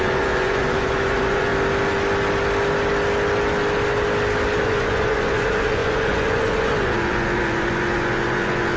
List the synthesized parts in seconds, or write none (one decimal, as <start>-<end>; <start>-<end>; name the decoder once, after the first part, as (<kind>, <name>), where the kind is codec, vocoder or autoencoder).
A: 0.0-1.5 (vocoder, Vocos); 4.6-8.8